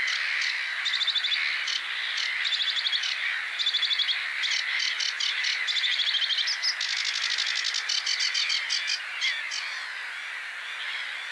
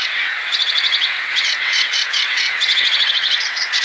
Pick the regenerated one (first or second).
second